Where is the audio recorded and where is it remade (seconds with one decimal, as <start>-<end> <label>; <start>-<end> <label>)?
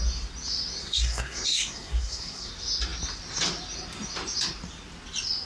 0.0-0.8 recorded; 0.8-2.5 remade; 2.5-5.5 recorded